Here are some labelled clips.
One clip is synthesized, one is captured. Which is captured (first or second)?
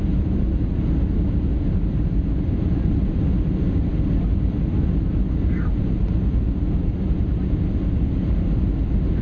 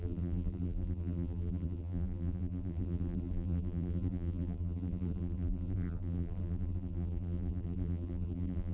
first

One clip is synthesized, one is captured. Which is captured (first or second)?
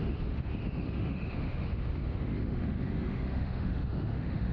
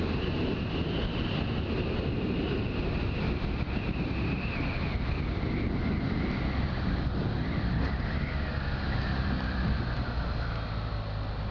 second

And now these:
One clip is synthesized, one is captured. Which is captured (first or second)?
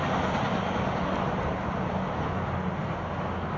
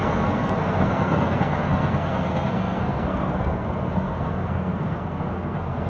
first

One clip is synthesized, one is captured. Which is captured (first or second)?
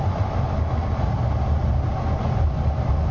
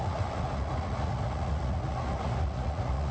first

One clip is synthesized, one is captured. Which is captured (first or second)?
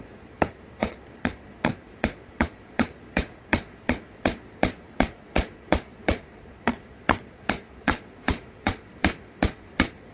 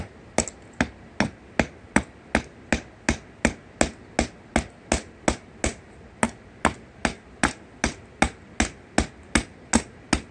second